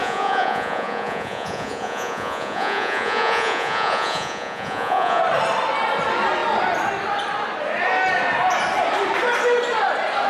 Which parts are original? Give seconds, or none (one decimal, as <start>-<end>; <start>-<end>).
5.2-10.3